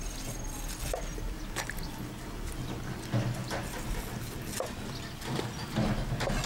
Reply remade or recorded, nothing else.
recorded